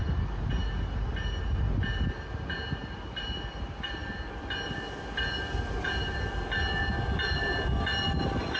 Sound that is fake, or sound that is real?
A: real